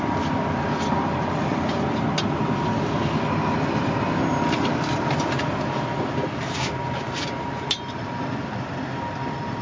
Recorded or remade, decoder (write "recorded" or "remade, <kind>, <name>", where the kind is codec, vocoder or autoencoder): recorded